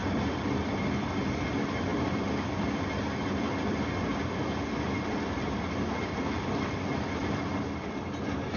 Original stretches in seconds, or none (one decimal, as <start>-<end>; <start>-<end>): 0.0-1.9; 2.5-7.2